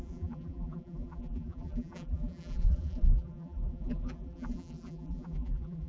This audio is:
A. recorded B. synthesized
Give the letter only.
B